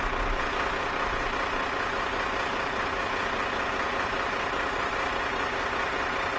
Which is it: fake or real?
real